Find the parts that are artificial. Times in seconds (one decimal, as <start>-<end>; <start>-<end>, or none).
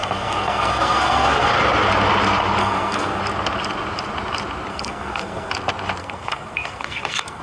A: 0.0-1.5; 2.6-3.2; 4.7-5.5; 6.0-7.4